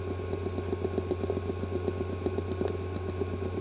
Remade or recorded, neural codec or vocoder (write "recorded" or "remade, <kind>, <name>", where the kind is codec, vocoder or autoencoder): recorded